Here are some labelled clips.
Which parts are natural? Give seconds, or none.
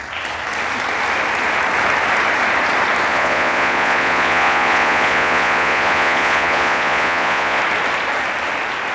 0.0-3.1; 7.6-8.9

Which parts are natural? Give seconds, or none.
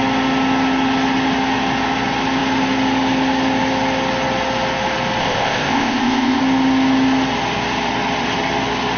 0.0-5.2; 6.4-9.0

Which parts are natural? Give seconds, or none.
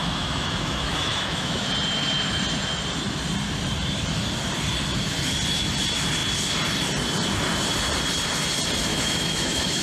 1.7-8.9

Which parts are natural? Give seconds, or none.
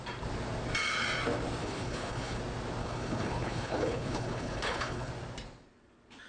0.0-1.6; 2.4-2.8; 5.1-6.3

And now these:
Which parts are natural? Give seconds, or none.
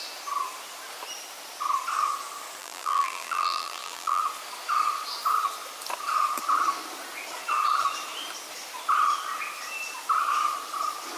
0.0-2.6; 4.2-11.2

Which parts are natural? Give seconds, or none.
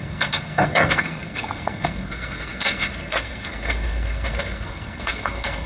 none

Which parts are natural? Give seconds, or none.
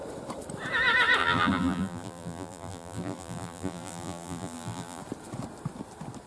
0.0-1.2; 5.0-6.3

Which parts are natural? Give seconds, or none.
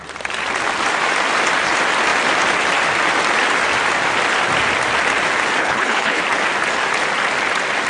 0.0-5.6; 6.2-7.9